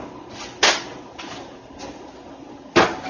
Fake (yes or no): no